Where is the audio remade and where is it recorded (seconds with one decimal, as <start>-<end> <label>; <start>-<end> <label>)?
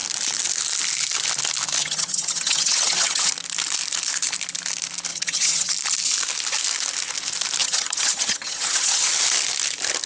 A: 0.0-1.8 recorded; 1.8-3.3 remade; 3.3-5.1 recorded; 5.1-5.7 remade; 5.7-7.6 recorded; 7.6-9.1 remade; 9.1-10.1 recorded